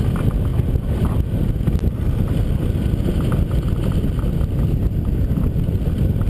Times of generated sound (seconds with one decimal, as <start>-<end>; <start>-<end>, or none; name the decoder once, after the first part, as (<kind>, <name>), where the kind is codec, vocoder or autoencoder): none